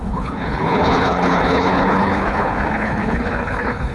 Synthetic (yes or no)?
yes